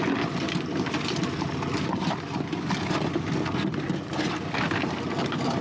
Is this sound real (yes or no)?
yes